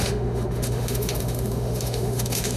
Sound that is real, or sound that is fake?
fake